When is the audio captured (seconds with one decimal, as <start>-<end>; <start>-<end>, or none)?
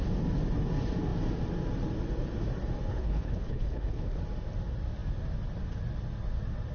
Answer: 0.0-2.9; 4.2-6.7